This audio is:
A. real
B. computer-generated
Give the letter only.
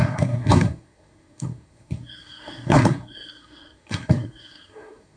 B